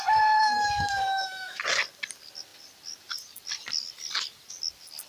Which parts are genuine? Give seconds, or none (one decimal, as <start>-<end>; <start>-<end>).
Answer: 0.0-0.4; 1.6-5.1